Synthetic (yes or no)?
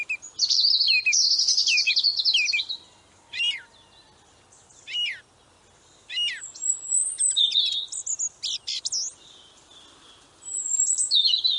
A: no